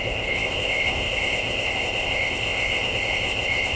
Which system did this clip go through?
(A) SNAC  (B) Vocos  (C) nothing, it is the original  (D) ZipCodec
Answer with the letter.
D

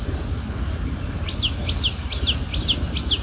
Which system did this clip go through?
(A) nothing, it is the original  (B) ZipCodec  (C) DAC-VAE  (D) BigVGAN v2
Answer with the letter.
A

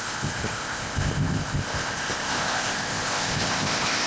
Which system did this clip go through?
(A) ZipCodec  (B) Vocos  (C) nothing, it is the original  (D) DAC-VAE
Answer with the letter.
A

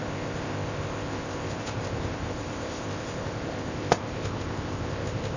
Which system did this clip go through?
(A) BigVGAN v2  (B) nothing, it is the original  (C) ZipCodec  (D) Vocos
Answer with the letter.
C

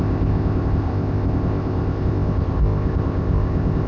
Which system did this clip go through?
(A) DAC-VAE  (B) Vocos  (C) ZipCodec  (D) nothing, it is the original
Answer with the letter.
C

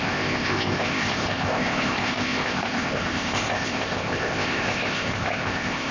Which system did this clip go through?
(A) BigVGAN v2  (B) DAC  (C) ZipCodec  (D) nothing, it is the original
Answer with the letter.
C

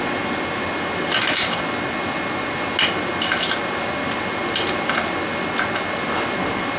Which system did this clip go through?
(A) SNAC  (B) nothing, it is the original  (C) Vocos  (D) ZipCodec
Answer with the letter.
B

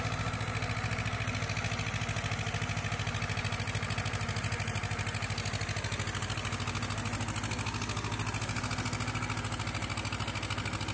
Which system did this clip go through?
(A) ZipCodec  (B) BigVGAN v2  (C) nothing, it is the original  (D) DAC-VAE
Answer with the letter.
C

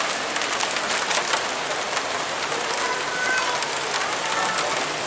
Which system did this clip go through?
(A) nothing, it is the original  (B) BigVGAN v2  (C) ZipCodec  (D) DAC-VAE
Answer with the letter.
A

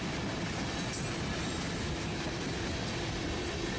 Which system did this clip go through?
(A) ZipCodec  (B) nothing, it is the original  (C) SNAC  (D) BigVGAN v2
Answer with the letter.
B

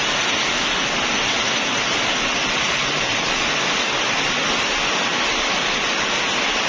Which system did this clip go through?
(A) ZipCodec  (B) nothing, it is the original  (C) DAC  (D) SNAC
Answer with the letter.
B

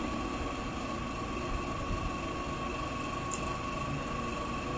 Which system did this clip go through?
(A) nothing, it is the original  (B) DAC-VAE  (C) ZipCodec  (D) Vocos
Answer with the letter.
A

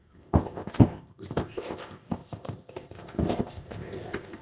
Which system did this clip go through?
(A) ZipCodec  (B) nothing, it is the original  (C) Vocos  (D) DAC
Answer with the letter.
A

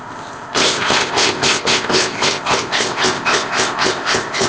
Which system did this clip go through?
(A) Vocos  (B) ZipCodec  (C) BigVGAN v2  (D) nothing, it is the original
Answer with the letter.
B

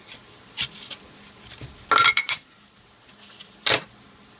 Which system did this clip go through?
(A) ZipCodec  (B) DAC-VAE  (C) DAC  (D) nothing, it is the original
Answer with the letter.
D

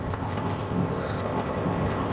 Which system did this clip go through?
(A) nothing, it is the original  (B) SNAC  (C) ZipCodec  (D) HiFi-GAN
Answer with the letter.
C